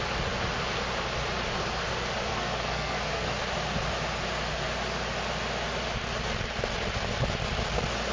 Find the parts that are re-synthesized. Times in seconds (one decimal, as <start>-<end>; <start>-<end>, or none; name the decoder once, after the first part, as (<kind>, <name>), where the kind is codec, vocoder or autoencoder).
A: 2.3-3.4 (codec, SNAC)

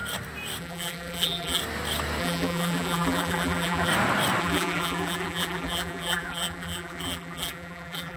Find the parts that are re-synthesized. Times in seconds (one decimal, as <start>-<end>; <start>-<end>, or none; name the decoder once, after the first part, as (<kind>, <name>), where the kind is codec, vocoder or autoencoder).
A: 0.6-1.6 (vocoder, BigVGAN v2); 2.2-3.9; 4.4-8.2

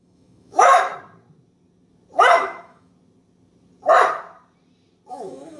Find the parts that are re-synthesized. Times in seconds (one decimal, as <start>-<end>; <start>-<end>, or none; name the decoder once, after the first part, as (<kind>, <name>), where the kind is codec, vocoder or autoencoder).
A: 0.0-0.9 (autoencoder, DAC-VAE); 2.3-2.9; 5.1-5.6

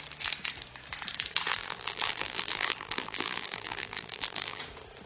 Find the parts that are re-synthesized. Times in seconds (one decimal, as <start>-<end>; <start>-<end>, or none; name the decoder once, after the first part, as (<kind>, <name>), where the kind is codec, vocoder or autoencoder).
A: 1.5-4.6 (vocoder, BigVGAN v2)